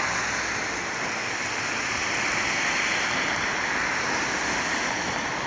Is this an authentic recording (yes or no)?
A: yes